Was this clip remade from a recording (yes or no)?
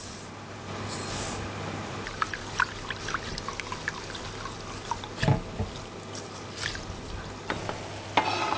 no